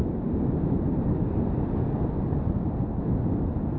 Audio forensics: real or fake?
real